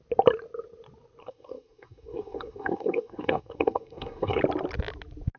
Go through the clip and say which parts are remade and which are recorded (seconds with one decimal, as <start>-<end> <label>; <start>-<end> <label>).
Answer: 0.0-1.2 recorded; 1.2-4.4 remade; 4.4-5.4 recorded